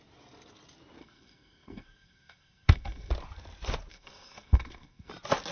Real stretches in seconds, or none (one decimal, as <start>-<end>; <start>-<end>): 0.0-1.0; 3.1-3.9; 5.1-5.5